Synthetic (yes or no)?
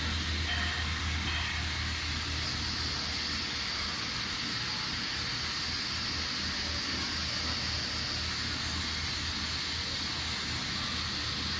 no